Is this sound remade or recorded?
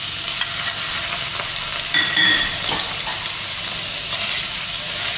recorded